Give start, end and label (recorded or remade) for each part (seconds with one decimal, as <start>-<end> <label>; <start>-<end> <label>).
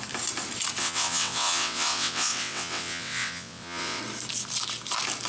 0.0-0.8 recorded; 0.8-4.0 remade; 4.0-5.3 recorded